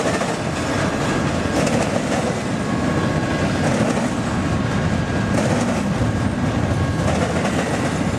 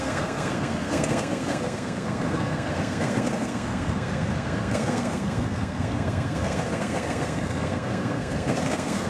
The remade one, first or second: second